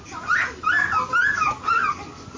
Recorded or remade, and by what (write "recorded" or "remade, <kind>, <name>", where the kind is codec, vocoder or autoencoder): recorded